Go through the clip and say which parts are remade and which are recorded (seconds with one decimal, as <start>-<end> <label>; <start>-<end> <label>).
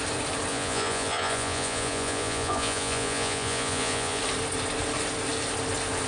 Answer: 0.0-0.5 recorded; 0.5-4.2 remade; 4.2-6.1 recorded